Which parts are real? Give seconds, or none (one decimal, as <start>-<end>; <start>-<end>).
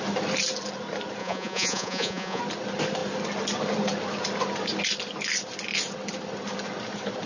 0.0-1.2; 2.4-7.3